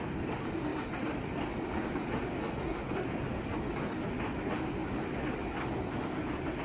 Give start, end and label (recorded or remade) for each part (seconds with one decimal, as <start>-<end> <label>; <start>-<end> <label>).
0.0-6.6 recorded